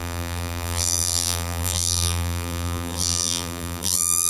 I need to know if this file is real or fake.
fake